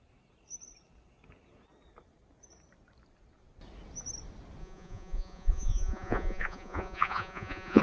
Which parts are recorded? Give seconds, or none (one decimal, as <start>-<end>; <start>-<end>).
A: 0.0-4.6